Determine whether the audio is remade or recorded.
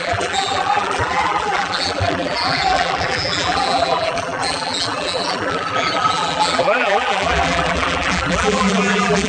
remade